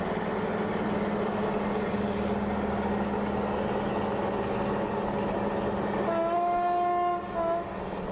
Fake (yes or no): no